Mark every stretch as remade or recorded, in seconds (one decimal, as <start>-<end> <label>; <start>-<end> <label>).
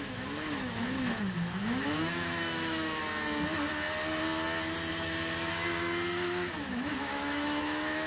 0.0-3.0 remade; 3.0-4.9 recorded; 4.9-8.1 remade